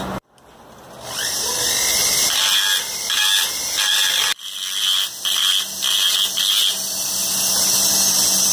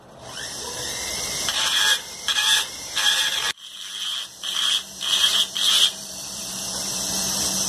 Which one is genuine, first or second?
first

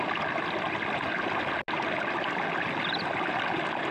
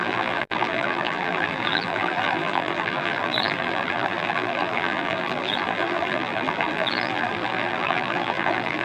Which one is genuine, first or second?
first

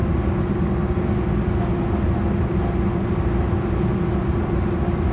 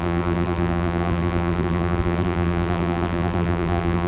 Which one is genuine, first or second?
first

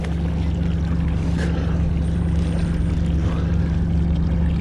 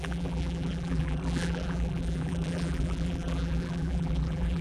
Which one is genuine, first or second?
first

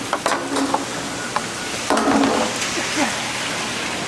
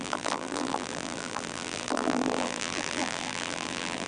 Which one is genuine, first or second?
first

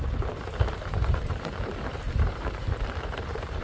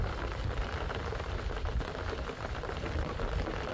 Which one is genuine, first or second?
second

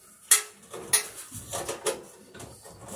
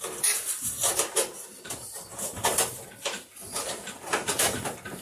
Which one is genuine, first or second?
first